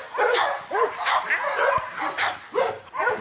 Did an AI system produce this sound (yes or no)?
no